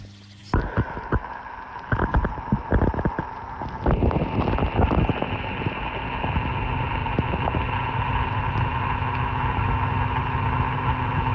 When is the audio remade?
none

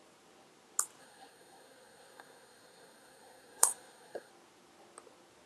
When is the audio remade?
1.0-4.3

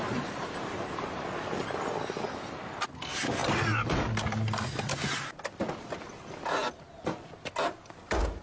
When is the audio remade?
none

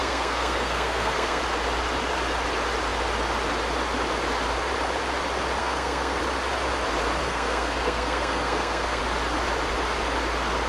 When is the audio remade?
0.0-1.4; 5.6-6.2; 7.2-9.0

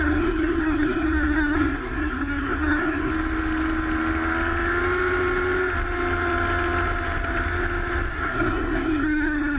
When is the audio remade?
0.0-3.1; 8.1-9.6

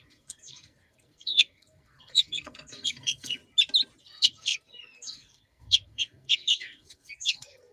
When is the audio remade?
0.0-3.4; 4.0-7.7